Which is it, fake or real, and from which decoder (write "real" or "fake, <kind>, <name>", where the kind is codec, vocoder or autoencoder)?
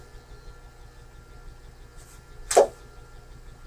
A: real